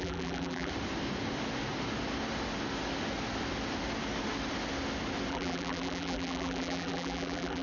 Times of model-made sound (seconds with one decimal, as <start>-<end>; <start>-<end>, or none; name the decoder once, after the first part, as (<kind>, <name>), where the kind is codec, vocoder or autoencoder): 0.0-0.7 (vocoder, BigVGAN v2); 5.3-7.6